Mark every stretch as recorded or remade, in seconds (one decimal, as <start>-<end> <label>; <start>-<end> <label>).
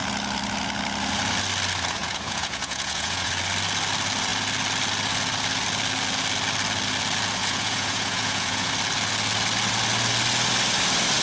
0.0-2.0 recorded; 2.0-3.3 remade; 3.3-7.4 recorded; 7.4-8.7 remade; 8.7-11.2 recorded